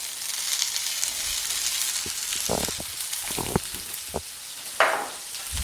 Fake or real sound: real